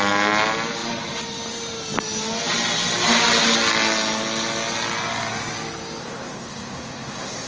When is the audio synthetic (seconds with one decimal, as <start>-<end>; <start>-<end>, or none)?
6.0-7.5